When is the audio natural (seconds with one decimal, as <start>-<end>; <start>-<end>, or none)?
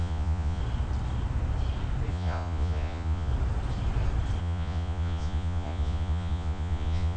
0.6-2.1; 3.3-4.4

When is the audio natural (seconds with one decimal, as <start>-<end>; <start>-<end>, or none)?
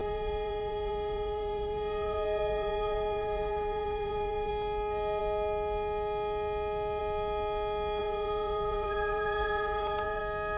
4.5-8.0; 10.2-10.6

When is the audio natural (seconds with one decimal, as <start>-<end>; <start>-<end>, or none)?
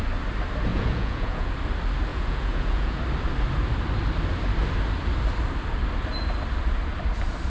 0.0-0.7; 1.5-2.1; 3.0-7.5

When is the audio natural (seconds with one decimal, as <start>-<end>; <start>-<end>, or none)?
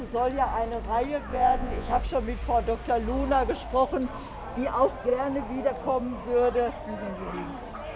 0.0-1.3; 2.0-8.0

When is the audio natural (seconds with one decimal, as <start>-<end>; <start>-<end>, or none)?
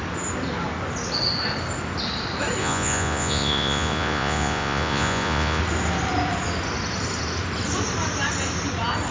0.0-2.6; 5.6-9.1